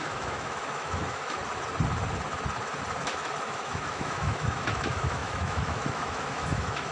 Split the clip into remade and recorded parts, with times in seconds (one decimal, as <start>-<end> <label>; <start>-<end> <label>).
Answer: 0.0-1.4 remade; 1.4-3.0 recorded; 3.0-6.9 remade